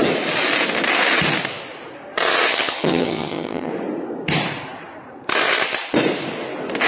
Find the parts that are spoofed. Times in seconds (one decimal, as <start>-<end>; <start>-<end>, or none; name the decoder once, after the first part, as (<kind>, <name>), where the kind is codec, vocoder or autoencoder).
2.5-3.7 (vocoder, HiFi-GAN)